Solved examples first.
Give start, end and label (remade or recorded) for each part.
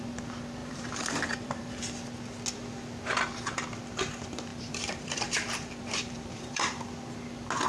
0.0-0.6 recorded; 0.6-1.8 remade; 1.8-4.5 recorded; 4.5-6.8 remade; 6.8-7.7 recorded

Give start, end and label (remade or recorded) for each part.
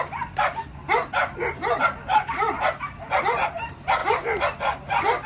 0.0-4.0 recorded; 4.0-4.6 remade; 4.6-5.3 recorded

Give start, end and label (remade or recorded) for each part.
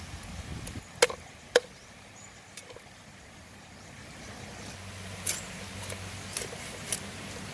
0.0-7.5 recorded